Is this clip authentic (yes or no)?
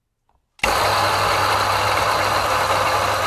yes